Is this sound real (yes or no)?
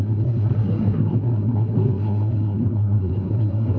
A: no